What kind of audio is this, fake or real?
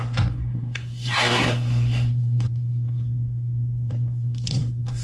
fake